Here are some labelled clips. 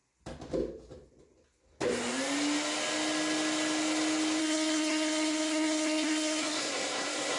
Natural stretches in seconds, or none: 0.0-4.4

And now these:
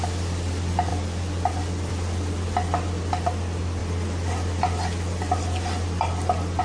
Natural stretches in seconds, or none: 0.0-6.6